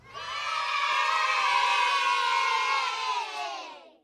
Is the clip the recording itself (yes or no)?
yes